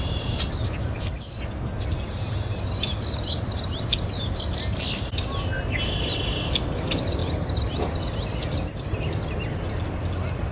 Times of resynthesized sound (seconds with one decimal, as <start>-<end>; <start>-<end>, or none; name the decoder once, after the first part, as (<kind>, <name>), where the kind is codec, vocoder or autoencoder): none

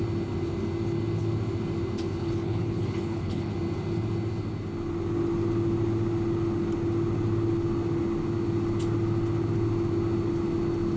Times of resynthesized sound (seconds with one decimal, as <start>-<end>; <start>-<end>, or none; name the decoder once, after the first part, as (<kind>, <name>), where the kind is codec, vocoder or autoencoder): 2.2-3.5 (codec, HILCodec)

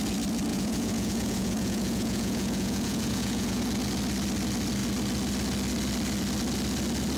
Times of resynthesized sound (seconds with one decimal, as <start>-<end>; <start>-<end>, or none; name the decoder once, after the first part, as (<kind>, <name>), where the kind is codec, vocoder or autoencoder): 0.5-3.6 (vocoder, Vocos)

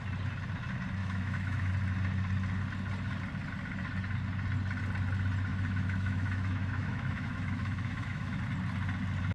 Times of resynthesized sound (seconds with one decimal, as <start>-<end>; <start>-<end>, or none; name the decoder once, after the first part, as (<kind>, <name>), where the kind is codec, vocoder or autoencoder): 1.0-1.7 (autoencoder, DAC-VAE); 5.5-8.4

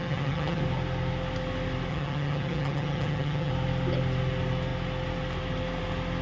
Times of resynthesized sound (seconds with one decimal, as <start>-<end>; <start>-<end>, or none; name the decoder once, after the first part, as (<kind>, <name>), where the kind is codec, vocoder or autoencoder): 0.0-0.6 (vocoder, HiFi-GAN); 1.9-3.5

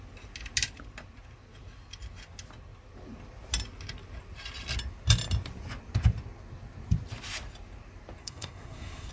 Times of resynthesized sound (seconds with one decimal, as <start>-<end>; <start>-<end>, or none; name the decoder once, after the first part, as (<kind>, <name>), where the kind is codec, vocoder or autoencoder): 8.2-9.1 (codec, SNAC)

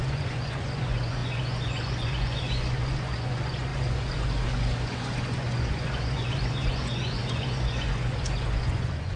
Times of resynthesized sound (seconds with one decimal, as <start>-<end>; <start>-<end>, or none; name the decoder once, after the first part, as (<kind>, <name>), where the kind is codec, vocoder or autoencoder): 0.0-9.2 (vocoder, Vocos)

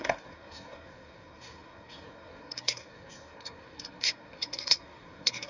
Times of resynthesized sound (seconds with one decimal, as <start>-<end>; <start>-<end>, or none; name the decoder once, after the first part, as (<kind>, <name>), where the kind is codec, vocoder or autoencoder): 0.0-5.5 (codec, SNAC)